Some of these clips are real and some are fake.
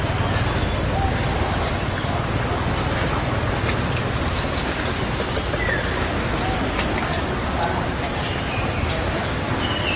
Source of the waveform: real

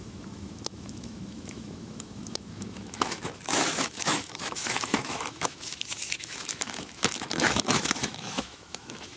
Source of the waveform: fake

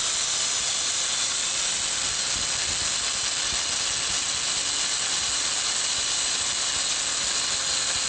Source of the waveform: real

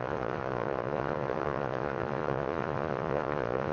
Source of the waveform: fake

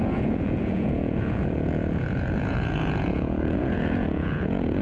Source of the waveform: fake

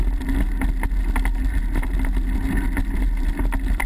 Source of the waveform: real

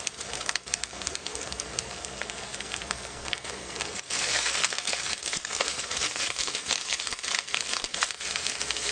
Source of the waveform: fake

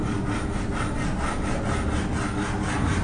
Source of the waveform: real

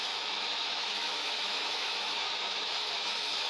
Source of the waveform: fake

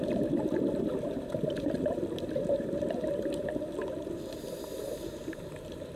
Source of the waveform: fake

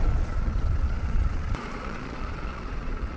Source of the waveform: fake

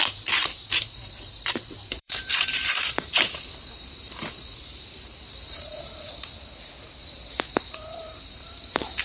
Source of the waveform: fake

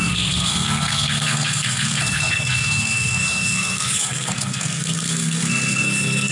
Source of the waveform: fake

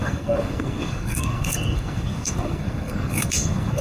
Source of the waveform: fake